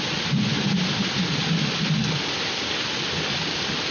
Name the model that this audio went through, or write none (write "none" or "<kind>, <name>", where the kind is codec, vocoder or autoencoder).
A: none